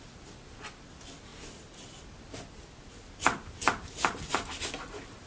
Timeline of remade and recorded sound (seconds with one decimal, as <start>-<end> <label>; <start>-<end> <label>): 0.0-5.3 recorded

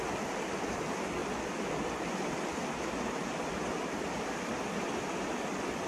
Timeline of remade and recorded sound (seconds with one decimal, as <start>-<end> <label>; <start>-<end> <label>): 0.0-5.9 recorded